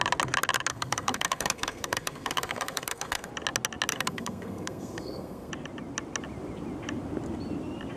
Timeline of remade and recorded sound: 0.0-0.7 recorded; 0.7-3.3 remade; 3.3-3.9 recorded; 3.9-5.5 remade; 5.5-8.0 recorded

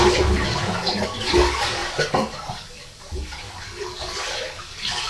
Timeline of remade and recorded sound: 0.0-5.1 remade

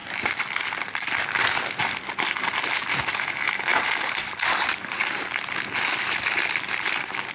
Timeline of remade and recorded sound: 0.0-3.7 recorded; 3.7-7.3 remade

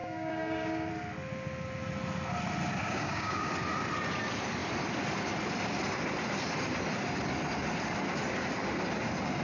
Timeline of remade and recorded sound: 0.0-0.9 remade; 0.9-2.8 recorded; 2.8-3.5 remade; 3.5-9.4 recorded

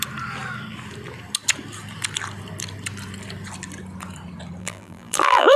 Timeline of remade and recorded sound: 0.0-4.6 recorded; 4.6-5.6 remade

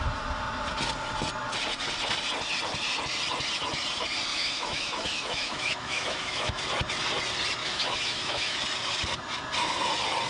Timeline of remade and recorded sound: 0.0-4.3 recorded; 4.3-6.6 remade; 6.6-7.6 recorded; 7.6-8.6 remade; 8.6-10.3 recorded

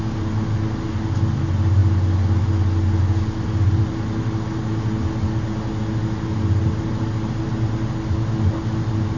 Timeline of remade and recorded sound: 0.0-9.2 recorded